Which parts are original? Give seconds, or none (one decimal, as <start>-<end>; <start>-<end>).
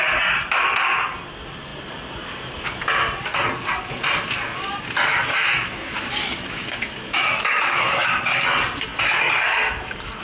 0.0-5.3; 8.1-10.2